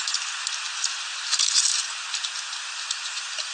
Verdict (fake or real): real